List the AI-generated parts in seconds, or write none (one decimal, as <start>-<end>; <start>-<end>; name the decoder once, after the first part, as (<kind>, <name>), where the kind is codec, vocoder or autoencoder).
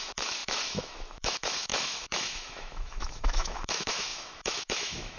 0.0-5.2 (autoencoder, DAC-VAE)